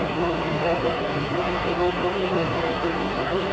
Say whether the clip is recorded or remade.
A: remade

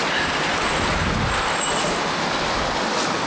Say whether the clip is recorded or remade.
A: recorded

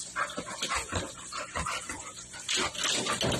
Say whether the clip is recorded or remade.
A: recorded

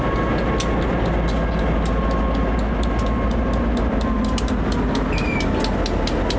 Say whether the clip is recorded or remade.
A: recorded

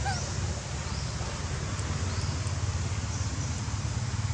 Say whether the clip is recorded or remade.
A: recorded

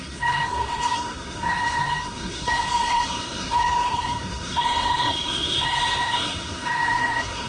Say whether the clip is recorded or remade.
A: remade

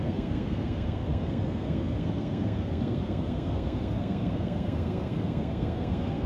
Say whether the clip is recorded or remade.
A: remade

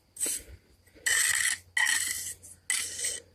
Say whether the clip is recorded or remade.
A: recorded